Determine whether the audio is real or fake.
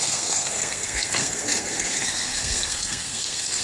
fake